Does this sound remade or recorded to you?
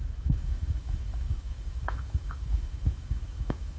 remade